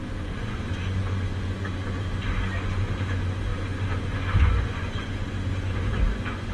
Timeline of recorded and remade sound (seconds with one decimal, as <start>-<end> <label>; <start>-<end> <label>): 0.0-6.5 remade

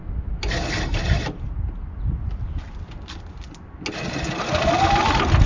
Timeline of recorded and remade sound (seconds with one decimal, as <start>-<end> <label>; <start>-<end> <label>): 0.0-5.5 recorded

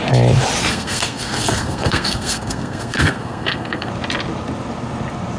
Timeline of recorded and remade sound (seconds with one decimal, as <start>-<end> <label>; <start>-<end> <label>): 0.0-0.7 recorded; 0.7-3.9 remade; 3.9-5.4 recorded

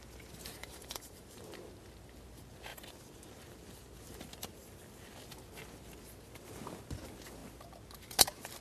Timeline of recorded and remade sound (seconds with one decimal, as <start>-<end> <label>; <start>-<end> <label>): 0.0-0.6 recorded; 0.6-1.4 remade; 1.4-8.6 recorded

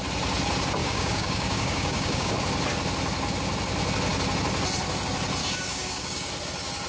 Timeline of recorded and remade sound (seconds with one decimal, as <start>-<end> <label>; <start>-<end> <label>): 0.0-0.8 recorded; 0.8-2.3 remade; 2.3-5.4 recorded; 5.4-6.3 remade; 6.3-6.9 recorded

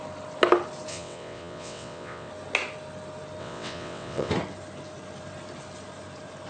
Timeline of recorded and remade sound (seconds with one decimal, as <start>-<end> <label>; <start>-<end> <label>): 0.0-0.9 recorded; 0.9-2.3 remade; 2.3-3.4 recorded; 3.4-4.3 remade; 4.3-6.5 recorded

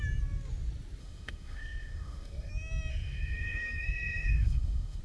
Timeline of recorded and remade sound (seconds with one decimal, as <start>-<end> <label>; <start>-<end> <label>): 0.0-1.0 recorded; 1.0-2.5 remade; 2.5-2.9 recorded; 2.9-5.0 remade